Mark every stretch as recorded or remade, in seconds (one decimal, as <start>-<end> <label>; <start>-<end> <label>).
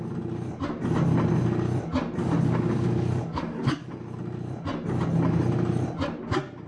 0.0-2.2 recorded; 2.2-3.9 remade; 3.9-6.7 recorded